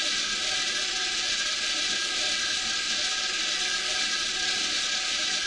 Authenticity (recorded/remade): remade